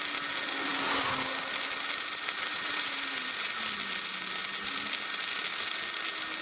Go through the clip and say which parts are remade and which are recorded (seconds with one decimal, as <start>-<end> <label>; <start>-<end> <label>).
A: 0.0-2.5 recorded; 2.5-3.3 remade; 3.3-6.4 recorded